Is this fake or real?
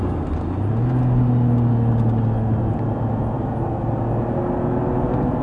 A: real